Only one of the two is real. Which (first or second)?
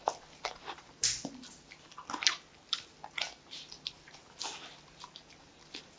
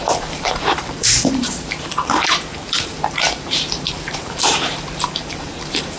first